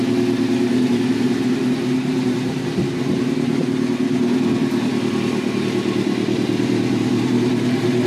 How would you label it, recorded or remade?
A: recorded